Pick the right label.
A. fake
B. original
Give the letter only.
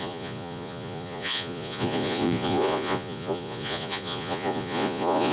A